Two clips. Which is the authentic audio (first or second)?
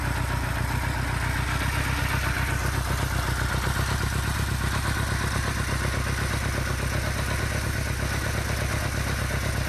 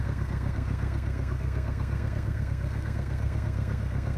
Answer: first